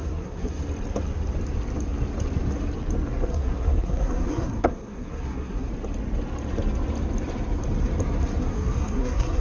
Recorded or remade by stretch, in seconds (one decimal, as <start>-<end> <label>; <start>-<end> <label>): 0.0-0.6 remade; 0.6-3.3 recorded; 3.3-5.7 remade; 5.7-8.4 recorded; 8.4-9.4 remade